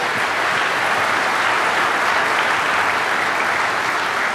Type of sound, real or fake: real